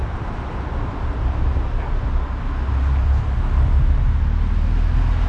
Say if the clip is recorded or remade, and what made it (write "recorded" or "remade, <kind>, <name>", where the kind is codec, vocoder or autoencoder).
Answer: recorded